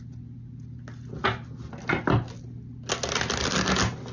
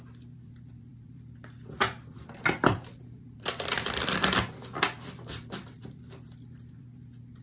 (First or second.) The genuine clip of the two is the first